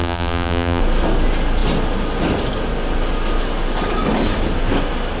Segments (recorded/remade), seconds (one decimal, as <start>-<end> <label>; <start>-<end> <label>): 0.0-0.8 remade; 0.8-5.2 recorded